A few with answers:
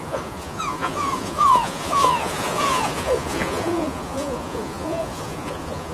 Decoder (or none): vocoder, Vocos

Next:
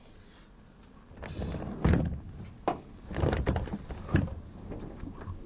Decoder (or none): none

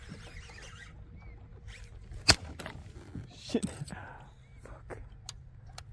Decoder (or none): none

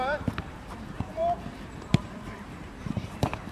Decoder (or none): vocoder, BigVGAN v2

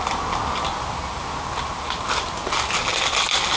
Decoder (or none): none